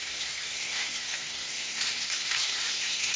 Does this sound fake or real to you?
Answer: fake